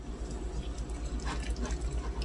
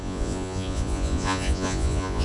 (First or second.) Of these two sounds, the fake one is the second